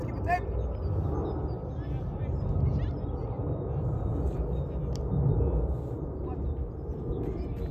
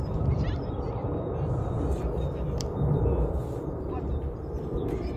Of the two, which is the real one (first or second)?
first